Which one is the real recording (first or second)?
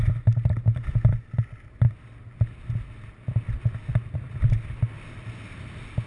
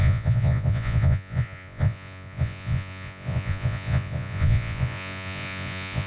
first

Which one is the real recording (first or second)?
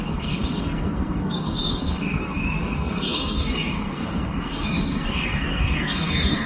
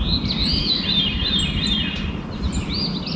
second